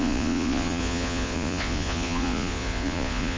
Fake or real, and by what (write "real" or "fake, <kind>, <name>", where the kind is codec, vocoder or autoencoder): fake, vocoder, Vocos